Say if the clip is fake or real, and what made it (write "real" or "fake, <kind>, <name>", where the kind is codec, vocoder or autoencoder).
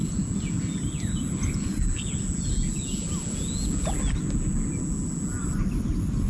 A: real